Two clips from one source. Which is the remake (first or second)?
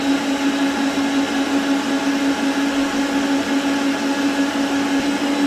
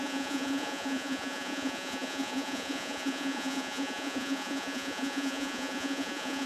second